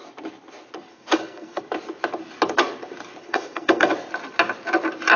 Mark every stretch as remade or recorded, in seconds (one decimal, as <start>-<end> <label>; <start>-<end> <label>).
0.0-0.9 recorded; 0.9-1.6 remade; 1.6-3.2 recorded; 3.2-3.9 remade; 3.9-5.2 recorded